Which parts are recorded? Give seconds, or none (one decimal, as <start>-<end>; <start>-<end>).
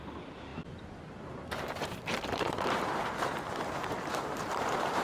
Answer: none